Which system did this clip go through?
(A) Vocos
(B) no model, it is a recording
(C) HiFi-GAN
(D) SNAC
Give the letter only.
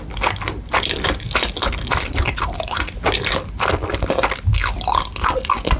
B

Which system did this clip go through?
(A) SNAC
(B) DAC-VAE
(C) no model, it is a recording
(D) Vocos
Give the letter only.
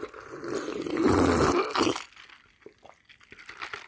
C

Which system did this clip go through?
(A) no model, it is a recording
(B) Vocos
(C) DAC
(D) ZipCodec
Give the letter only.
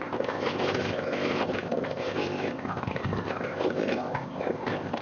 D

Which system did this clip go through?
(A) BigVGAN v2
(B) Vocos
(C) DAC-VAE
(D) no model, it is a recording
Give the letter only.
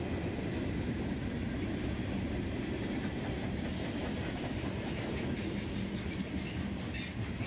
D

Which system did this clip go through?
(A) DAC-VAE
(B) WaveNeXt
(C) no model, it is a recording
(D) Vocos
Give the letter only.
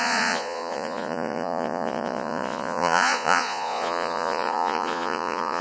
D